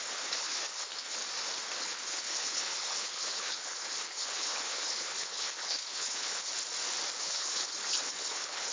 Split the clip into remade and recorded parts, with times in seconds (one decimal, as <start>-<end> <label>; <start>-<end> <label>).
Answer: 0.0-1.2 remade; 1.2-1.8 recorded; 1.8-6.5 remade; 6.5-7.2 recorded; 7.2-8.7 remade